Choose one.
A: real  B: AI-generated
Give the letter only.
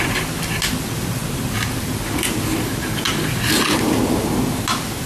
A